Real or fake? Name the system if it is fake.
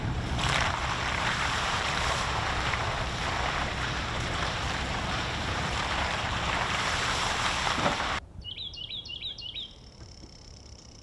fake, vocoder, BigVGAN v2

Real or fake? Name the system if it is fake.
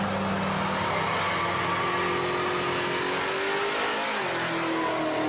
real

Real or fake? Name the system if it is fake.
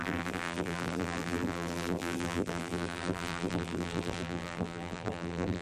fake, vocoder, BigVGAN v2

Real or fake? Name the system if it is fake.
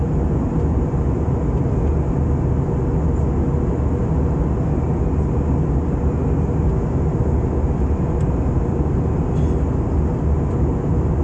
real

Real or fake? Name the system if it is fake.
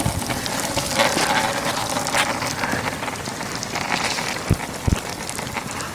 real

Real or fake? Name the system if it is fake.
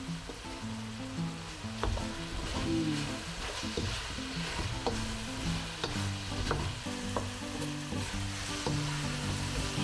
real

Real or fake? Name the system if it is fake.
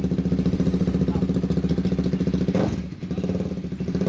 real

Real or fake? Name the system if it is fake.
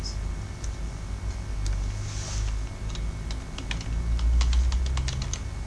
real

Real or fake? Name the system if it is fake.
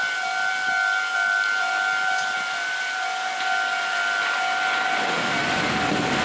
real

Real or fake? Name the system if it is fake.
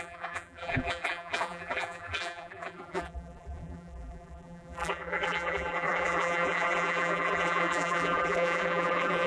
fake, vocoder, BigVGAN v2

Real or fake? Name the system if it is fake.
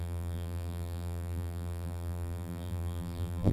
fake, vocoder, BigVGAN v2